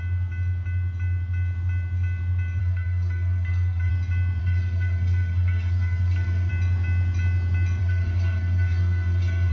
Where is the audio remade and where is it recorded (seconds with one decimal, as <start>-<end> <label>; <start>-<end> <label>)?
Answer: 0.0-2.6 recorded; 2.6-3.9 remade; 3.9-4.4 recorded; 4.4-6.5 remade; 6.5-7.8 recorded; 7.8-9.5 remade